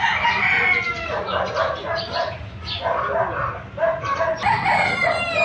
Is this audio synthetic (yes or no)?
no